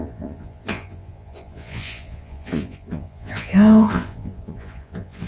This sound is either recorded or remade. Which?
remade